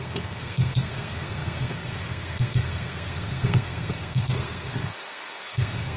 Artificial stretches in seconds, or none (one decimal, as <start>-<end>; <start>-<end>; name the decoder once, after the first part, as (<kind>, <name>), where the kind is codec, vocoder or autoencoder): 0.0-6.0 (codec, SNAC)